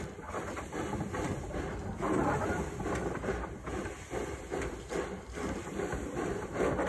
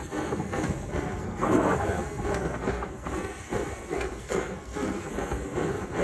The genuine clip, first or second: first